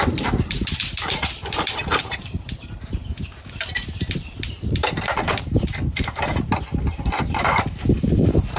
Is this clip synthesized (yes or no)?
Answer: yes